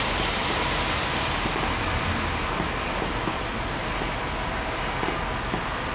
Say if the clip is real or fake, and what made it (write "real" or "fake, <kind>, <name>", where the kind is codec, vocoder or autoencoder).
real